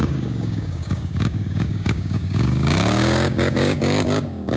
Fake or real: fake